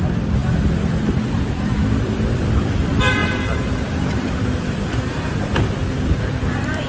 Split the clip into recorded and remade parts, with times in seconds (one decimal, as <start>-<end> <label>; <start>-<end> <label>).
0.0-6.9 remade

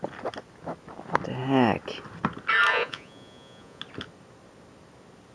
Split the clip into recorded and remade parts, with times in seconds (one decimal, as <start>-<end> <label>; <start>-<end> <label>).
0.0-2.7 recorded; 2.7-3.8 remade; 3.8-5.3 recorded

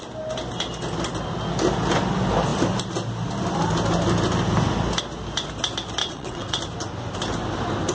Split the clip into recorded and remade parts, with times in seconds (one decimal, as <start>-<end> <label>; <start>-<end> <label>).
0.0-6.0 recorded; 6.0-6.6 remade; 6.6-7.9 recorded

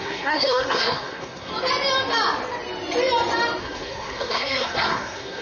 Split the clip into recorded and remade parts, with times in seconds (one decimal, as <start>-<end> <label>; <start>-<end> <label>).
0.0-1.5 remade; 1.5-3.6 recorded; 3.6-5.4 remade

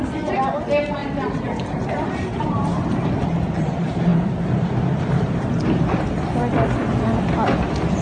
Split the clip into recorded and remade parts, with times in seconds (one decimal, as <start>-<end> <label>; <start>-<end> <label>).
0.0-1.0 recorded; 1.0-2.9 remade; 2.9-4.1 recorded; 4.1-5.5 remade; 5.5-8.0 recorded